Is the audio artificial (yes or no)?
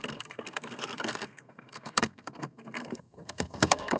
yes